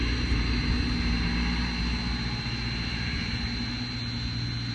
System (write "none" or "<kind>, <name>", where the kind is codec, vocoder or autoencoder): none